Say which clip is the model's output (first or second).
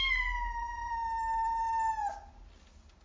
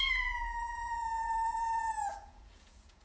second